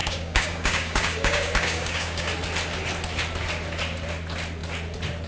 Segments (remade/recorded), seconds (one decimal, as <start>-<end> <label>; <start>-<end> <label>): 0.0-2.3 remade; 2.3-5.3 recorded